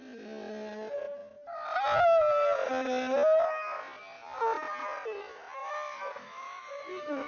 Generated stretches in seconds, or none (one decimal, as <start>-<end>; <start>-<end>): 5.6-7.3